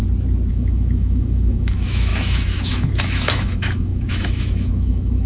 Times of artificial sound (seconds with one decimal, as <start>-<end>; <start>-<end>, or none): 0.5-5.3